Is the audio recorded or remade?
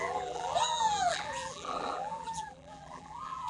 remade